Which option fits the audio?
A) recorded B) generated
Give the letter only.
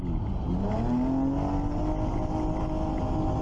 A